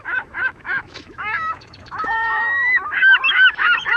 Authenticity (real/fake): fake